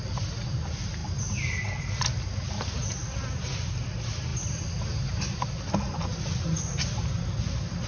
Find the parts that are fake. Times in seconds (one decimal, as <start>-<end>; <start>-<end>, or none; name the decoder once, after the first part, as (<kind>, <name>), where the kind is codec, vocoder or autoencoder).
none